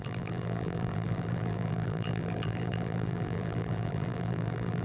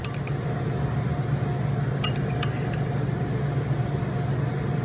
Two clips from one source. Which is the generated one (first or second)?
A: first